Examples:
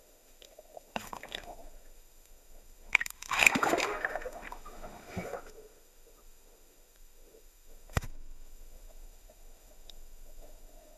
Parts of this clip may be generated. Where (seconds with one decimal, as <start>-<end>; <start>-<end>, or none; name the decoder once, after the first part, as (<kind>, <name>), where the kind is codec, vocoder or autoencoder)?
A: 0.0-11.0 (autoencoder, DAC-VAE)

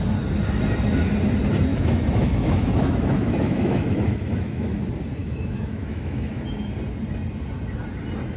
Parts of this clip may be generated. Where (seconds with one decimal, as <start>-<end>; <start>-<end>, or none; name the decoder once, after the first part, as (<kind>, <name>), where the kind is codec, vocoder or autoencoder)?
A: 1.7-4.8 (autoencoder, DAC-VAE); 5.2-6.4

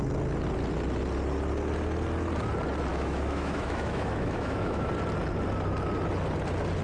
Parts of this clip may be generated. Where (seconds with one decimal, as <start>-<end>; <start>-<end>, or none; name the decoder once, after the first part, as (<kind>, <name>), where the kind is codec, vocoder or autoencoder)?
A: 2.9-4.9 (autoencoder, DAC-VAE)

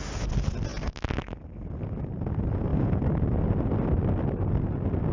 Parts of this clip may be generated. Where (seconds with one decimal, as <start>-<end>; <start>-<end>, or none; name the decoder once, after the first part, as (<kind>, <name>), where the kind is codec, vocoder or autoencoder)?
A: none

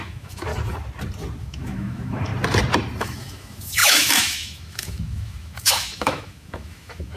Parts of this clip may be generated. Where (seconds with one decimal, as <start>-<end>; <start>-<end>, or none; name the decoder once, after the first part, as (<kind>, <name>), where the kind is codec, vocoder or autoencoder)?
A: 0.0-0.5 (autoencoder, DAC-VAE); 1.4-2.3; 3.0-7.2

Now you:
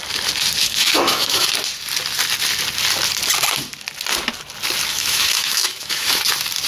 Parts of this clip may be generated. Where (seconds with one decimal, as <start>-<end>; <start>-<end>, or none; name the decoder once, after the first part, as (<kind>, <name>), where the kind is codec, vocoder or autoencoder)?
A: 0.6-1.5 (autoencoder, DAC-VAE); 4.9-6.2